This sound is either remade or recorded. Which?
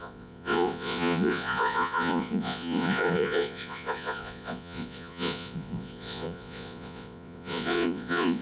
remade